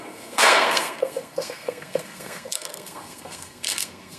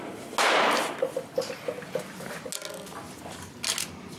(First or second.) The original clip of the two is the second